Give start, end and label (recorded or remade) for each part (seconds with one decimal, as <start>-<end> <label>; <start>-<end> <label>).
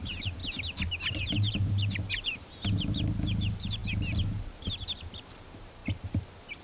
0.0-0.4 remade; 0.4-1.1 recorded; 1.1-3.8 remade; 3.8-5.2 recorded; 5.2-6.6 remade